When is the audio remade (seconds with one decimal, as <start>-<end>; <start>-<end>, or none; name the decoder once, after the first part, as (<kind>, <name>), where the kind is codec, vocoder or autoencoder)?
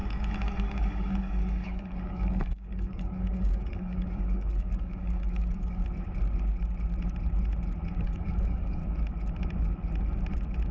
0.0-5.8 (codec, DAC); 8.0-8.8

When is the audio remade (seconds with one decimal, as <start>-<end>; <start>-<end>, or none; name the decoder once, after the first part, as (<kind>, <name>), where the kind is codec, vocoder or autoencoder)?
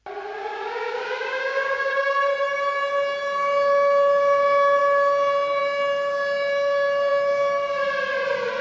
0.5-2.2 (codec, DAC)